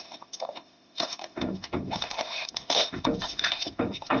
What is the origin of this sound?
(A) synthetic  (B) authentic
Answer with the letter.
A